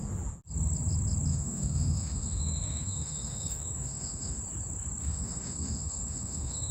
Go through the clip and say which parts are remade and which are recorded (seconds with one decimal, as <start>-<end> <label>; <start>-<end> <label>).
0.0-1.3 recorded; 1.3-4.4 remade; 4.4-5.0 recorded; 5.0-6.7 remade